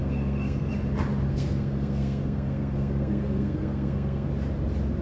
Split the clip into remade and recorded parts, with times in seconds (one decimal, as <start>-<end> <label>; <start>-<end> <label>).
0.0-0.7 remade; 0.7-1.3 recorded; 1.3-4.3 remade; 4.3-5.0 recorded

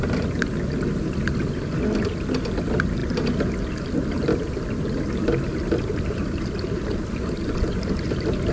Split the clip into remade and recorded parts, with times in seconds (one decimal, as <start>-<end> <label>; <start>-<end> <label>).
0.0-8.5 recorded

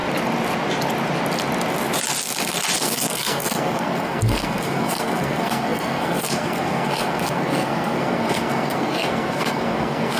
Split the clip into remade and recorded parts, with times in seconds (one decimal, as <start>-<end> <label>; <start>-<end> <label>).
0.0-2.8 recorded; 2.8-10.2 remade